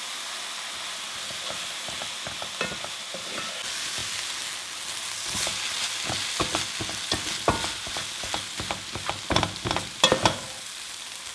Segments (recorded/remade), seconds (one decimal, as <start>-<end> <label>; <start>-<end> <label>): 0.0-11.3 recorded